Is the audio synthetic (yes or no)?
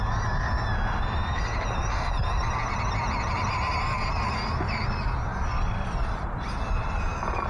no